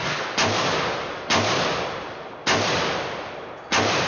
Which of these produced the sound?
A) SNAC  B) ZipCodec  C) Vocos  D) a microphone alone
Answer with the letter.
D